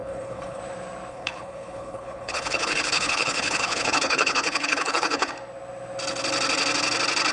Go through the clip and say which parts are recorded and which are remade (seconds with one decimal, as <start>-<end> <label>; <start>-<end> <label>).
0.0-0.6 remade; 0.6-1.1 recorded; 1.1-5.3 remade; 5.3-7.3 recorded